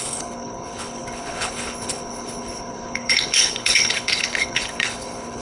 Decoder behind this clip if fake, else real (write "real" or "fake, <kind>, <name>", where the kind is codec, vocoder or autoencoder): fake, codec, HILCodec